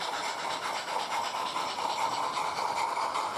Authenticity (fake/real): fake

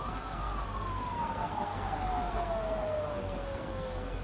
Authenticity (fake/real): fake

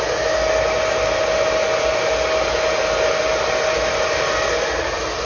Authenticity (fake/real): real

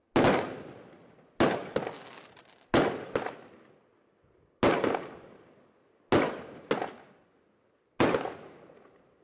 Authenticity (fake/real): real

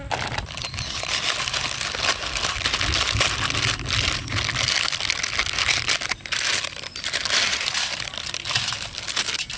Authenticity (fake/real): real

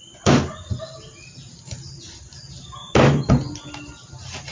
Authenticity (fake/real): real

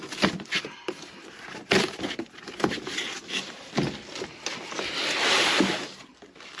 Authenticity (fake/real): real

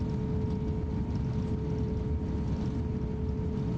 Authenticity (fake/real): real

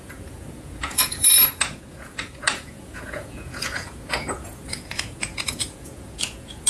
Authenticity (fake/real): fake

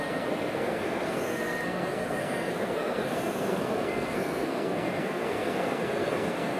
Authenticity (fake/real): fake